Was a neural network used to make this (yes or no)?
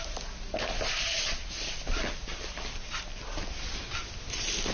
no